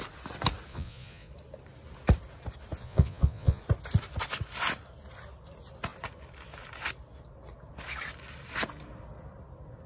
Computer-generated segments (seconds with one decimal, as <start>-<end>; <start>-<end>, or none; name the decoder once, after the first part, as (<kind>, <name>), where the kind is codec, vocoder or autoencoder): 0.7-1.3 (vocoder, Vocos); 2.8-3.6